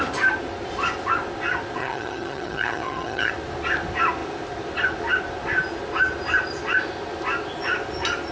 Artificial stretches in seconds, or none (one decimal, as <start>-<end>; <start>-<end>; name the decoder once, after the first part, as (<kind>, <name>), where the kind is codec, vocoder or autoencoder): 1.8-3.3 (vocoder, HiFi-GAN)